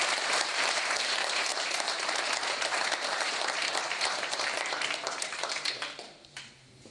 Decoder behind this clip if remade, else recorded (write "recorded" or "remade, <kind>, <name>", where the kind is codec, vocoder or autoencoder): remade, vocoder, BigVGAN v2